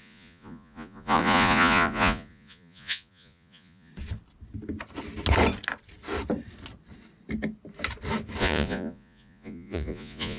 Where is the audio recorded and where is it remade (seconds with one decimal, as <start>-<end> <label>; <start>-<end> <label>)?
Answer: 0.0-3.9 remade; 3.9-8.4 recorded; 8.4-10.4 remade